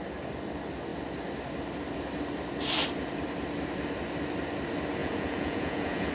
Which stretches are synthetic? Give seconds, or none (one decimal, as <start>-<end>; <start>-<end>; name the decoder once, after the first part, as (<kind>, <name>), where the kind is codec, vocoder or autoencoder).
5.0-6.1 (vocoder, Vocos)